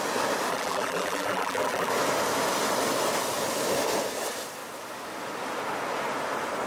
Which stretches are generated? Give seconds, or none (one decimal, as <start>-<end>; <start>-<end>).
0.5-1.9